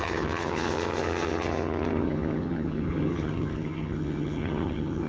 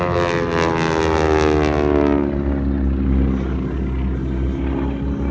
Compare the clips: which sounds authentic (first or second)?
second